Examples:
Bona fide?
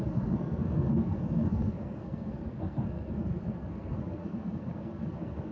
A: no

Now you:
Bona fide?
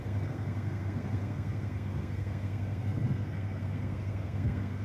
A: no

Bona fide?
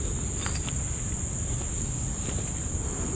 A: yes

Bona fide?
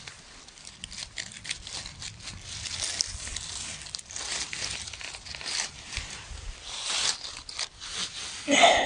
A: yes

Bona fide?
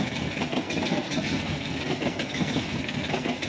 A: no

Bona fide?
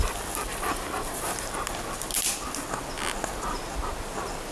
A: yes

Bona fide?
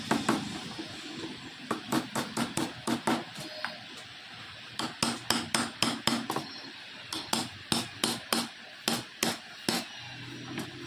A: yes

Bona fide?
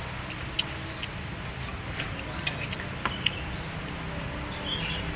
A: yes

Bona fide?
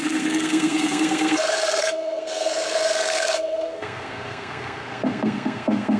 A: no